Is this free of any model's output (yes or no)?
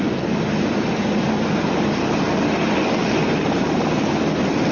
yes